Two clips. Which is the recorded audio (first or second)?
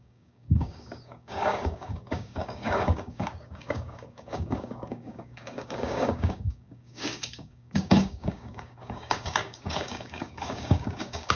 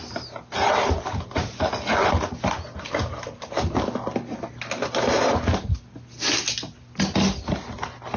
second